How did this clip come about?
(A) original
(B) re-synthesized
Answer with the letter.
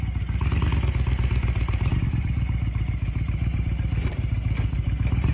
A